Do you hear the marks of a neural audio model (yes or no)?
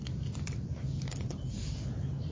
no